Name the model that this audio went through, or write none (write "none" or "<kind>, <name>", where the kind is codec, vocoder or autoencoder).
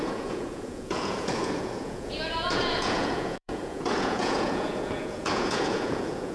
vocoder, Vocos